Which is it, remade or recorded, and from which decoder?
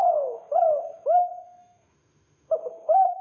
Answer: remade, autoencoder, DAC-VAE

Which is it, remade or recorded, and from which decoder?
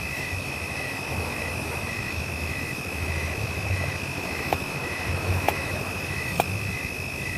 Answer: remade, autoencoder, DAC-VAE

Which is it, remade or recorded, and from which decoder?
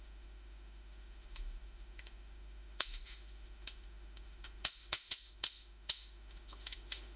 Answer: remade, autoencoder, DAC-VAE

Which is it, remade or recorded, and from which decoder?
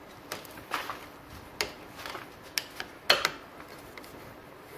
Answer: recorded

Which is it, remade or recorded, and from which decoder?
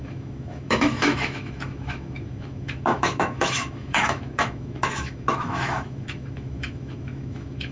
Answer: remade, autoencoder, DAC-VAE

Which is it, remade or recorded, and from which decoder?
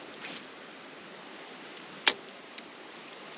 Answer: recorded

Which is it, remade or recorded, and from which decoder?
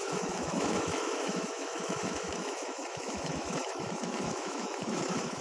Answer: remade, autoencoder, DAC-VAE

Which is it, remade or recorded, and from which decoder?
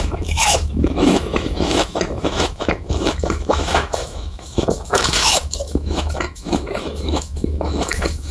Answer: remade, autoencoder, DAC-VAE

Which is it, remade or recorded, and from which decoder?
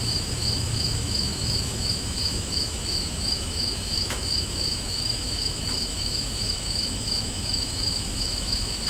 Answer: remade, autoencoder, DAC-VAE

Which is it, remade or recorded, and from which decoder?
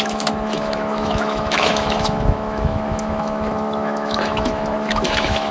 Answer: remade, autoencoder, DAC-VAE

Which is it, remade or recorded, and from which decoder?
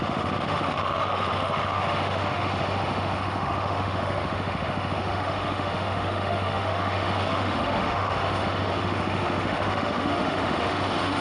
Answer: remade, autoencoder, DAC-VAE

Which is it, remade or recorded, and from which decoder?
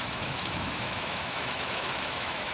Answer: remade, autoencoder, DAC-VAE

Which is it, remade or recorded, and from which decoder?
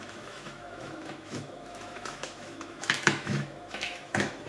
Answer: remade, autoencoder, DAC-VAE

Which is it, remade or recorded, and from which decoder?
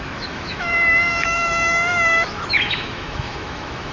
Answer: remade, autoencoder, DAC-VAE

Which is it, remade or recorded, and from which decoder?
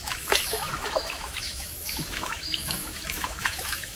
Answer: remade, autoencoder, DAC-VAE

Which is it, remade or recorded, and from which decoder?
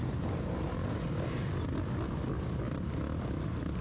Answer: recorded